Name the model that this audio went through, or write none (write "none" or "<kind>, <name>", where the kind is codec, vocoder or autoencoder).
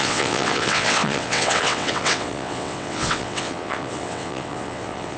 vocoder, WaveNeXt